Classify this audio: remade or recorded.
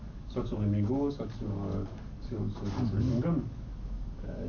remade